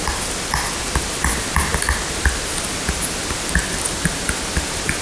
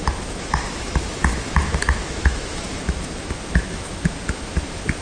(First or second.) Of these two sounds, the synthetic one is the second